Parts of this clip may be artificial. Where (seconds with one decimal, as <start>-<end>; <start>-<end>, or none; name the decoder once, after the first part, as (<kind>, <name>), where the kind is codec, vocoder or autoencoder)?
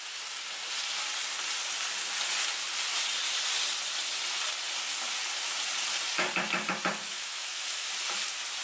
7.0-7.9 (autoencoder, DAC-VAE)